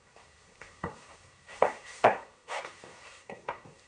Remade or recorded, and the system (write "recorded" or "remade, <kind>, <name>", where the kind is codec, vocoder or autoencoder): remade, codec, SNAC